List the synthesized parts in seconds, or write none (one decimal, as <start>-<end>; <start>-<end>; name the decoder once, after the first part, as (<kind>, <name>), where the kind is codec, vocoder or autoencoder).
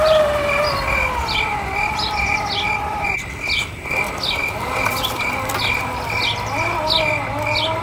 none